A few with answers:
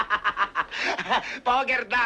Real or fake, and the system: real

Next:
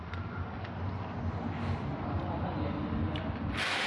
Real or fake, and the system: real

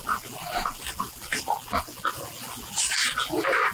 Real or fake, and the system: real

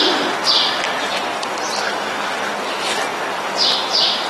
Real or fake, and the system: real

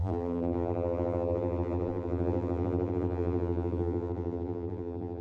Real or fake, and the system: fake, vocoder, BigVGAN v2